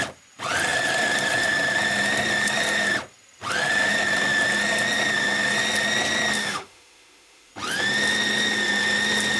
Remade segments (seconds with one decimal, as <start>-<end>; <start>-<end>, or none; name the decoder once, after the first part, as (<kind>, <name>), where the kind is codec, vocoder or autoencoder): 6.4-7.5 (autoencoder, DAC-VAE)